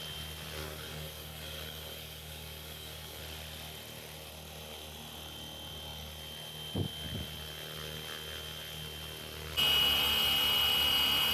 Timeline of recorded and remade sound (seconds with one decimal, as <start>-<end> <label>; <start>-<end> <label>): 0.0-0.6 recorded; 0.6-3.2 remade; 3.2-11.3 recorded